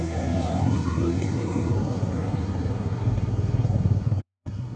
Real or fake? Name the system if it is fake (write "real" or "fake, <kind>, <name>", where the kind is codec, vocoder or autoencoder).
fake, codec, SNAC